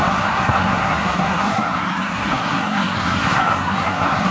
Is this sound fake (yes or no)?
yes